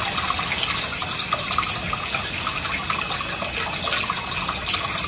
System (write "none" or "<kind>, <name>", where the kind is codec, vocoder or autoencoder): none